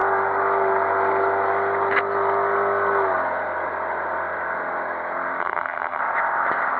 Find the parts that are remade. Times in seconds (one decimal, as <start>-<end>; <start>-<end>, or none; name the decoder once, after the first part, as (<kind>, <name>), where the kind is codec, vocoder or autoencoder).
5.4-6.0 (vocoder, HiFi-GAN)